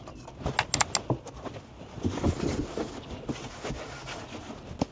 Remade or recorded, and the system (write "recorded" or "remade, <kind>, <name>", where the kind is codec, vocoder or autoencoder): recorded